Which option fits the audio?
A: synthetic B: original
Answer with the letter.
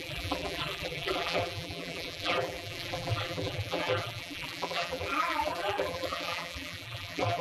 A